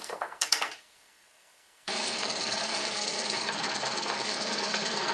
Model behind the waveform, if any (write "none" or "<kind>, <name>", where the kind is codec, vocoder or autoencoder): codec, SNAC